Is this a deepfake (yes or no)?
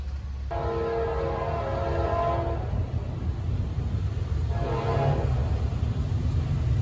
no